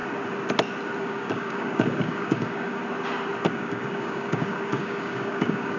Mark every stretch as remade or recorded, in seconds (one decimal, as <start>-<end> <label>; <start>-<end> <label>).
0.0-1.0 recorded; 1.0-2.8 remade; 2.8-3.5 recorded; 3.5-5.8 remade